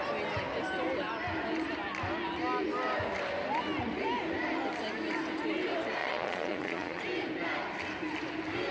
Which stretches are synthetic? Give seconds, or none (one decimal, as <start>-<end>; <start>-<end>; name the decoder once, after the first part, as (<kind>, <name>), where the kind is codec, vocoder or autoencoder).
6.0-7.0 (vocoder, Vocos)